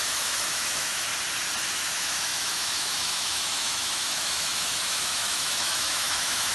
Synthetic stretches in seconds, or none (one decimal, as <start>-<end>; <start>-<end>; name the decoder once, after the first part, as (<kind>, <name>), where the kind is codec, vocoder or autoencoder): 0.0-1.1 (autoencoder, DAC-VAE); 1.7-6.5